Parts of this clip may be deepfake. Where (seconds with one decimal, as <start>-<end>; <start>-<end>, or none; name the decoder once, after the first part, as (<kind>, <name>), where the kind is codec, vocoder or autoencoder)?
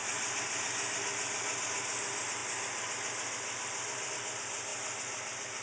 none